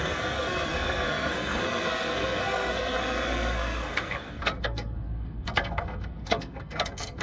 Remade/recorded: remade